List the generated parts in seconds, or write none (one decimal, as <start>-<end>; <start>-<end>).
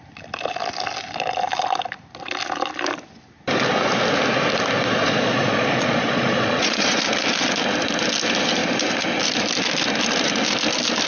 5.0-7.0